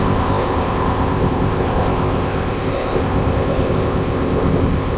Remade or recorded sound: remade